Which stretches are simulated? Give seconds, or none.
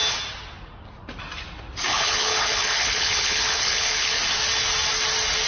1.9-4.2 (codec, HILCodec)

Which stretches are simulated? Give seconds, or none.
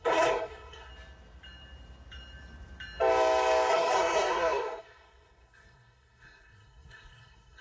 0.0-0.9 (codec, SNAC); 3.7-7.6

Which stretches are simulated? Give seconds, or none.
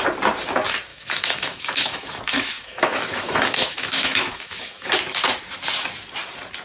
0.9-4.9 (autoencoder, DAC-VAE)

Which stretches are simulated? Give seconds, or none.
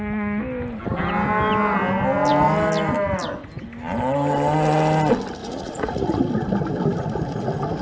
5.4-6.2 (vocoder, Vocos)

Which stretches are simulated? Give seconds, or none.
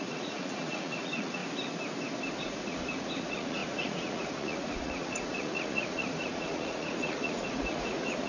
0.0-1.4 (vocoder, Vocos); 2.4-8.3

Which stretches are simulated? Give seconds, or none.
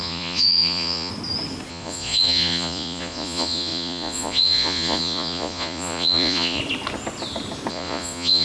0.0-1.1 (vocoder, Vocos); 1.7-6.6; 7.7-8.4